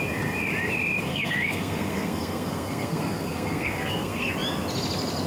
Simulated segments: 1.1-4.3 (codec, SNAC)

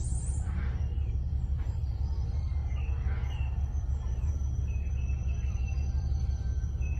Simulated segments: 0.0-2.6 (vocoder, BigVGAN v2); 3.8-4.3; 5.5-7.0

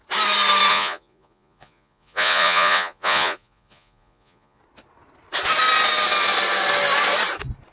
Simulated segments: 0.7-4.6 (vocoder, Vocos)

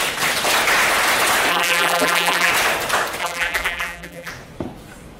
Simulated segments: 1.5-2.5 (vocoder, BigVGAN v2); 3.2-4.3

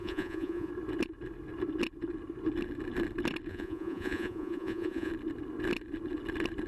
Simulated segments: 0.0-0.7 (vocoder, Vocos); 3.5-5.1

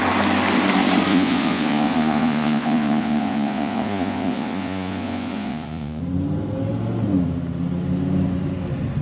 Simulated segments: 1.1-6.0 (vocoder, Vocos)